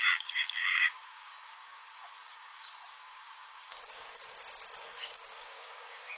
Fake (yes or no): yes